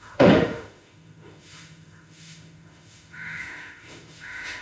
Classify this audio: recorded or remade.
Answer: remade